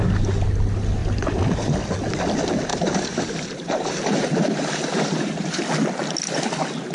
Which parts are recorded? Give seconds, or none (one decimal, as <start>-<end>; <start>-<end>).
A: 0.0-2.7; 5.6-6.9